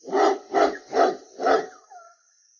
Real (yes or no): yes